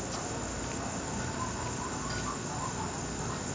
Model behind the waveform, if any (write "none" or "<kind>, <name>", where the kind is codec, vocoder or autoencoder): none